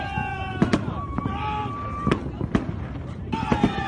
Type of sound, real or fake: real